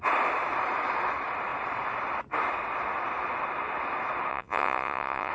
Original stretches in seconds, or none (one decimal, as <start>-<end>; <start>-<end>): 0.0-4.3